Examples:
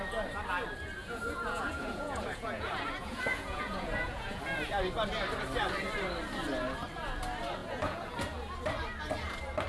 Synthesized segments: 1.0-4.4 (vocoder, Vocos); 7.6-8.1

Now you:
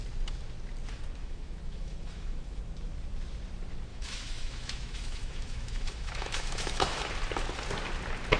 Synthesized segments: 1.2-2.6 (autoencoder, DAC-VAE); 3.9-7.1

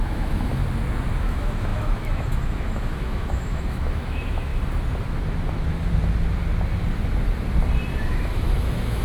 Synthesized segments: 0.0-0.6 (autoencoder, DAC-VAE); 1.2-4.5; 8.1-9.0

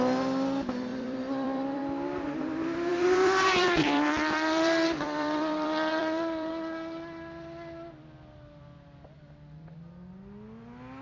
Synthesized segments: 0.9-1.8 (vocoder, BigVGAN v2); 2.9-6.5

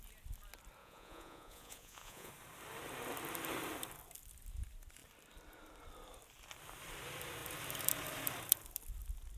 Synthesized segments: 0.8-2.3 (vocoder, Vocos)